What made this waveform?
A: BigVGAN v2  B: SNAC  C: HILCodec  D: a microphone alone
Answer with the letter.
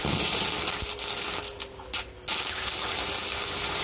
D